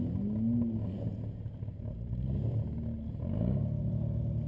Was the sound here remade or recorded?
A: recorded